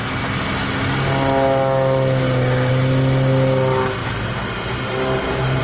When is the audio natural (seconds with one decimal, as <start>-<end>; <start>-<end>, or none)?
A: 0.0-4.0